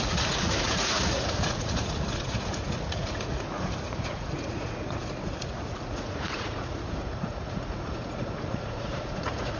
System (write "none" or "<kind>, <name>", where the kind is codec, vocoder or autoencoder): vocoder, Vocos